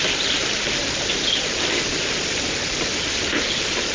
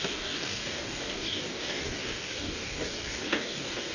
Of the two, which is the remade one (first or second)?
second